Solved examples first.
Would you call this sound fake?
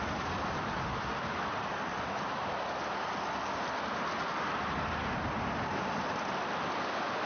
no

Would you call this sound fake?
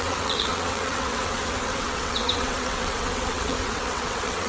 yes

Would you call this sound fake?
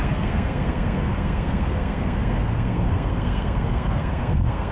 yes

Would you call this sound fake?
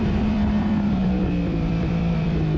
yes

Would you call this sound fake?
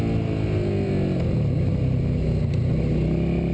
no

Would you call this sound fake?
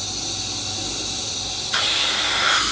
no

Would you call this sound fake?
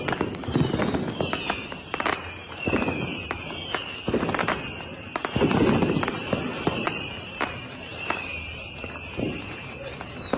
no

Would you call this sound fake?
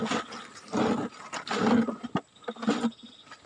no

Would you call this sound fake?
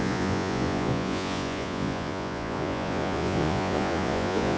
yes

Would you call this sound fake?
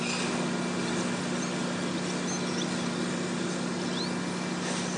no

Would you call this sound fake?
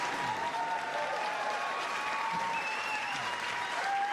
yes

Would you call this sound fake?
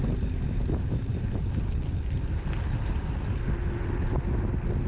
no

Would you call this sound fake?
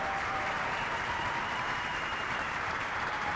yes